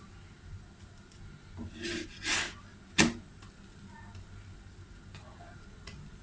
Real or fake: real